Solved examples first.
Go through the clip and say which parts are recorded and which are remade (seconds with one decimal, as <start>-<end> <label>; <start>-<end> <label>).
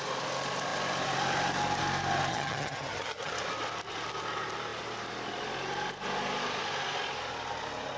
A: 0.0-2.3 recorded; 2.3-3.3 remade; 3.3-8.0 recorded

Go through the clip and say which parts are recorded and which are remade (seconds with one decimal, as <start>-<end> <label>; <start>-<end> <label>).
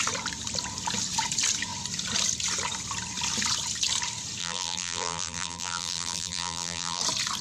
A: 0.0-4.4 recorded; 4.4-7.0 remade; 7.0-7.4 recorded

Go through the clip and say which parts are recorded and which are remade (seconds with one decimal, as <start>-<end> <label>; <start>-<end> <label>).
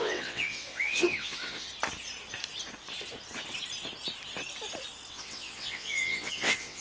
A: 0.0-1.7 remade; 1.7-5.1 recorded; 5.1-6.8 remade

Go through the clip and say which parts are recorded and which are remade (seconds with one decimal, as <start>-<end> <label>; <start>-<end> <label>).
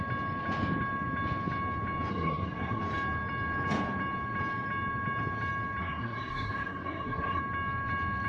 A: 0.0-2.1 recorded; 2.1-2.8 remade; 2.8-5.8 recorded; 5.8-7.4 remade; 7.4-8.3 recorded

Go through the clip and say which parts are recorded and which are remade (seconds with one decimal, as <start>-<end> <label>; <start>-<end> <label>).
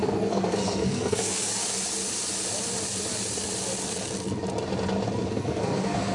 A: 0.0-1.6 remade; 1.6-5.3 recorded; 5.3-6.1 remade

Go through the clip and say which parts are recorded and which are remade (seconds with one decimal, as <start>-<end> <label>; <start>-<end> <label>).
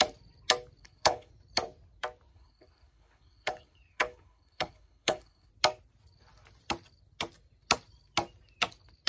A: 0.0-0.8 recorded; 0.8-1.3 remade; 1.3-2.3 recorded; 2.3-5.5 remade; 5.5-9.1 recorded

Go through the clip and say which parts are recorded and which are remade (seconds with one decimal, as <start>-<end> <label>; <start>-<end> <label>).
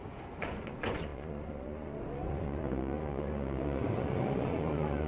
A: 0.0-5.1 remade